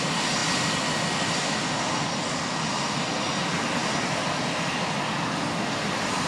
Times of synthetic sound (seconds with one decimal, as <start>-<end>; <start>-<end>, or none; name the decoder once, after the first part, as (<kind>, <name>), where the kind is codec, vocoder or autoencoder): none